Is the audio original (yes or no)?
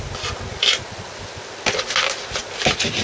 yes